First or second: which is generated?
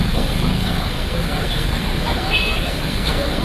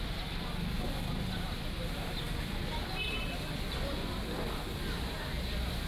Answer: first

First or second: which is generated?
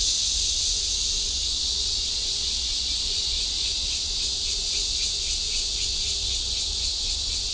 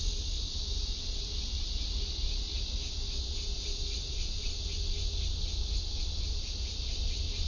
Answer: first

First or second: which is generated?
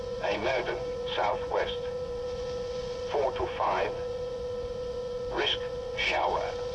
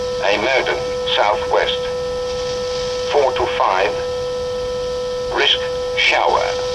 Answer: first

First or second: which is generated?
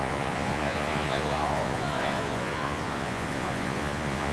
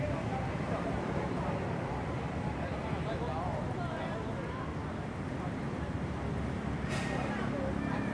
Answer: first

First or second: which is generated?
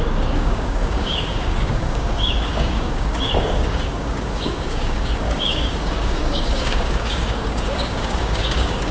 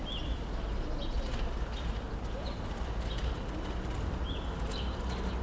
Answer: first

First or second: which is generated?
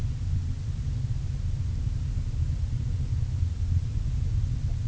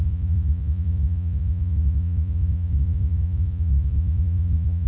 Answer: second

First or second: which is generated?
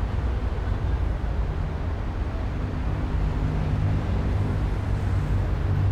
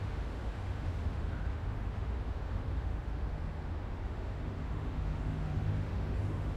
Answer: second